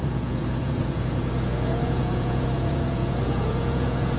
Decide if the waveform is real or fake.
fake